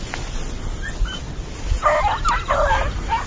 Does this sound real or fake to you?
real